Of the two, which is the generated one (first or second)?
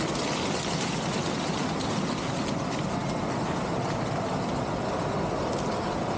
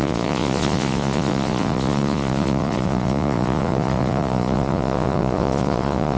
second